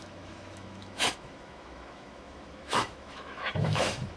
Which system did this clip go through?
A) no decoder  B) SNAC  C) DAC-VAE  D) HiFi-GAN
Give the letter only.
C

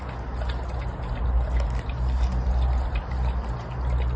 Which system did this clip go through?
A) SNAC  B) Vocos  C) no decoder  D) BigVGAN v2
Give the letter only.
C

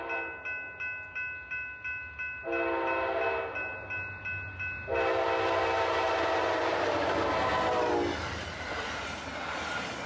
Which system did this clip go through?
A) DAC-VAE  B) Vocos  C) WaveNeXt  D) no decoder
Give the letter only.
D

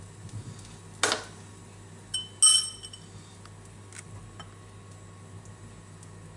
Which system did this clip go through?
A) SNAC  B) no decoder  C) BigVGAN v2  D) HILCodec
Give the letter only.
B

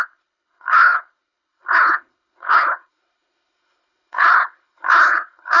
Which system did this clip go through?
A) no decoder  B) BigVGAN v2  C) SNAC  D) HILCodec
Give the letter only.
D